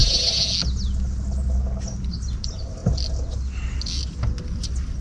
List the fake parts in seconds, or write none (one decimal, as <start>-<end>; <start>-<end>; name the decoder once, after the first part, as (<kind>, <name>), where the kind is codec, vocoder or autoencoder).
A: none